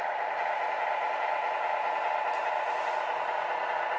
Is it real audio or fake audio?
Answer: real